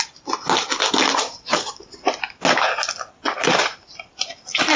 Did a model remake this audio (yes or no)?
no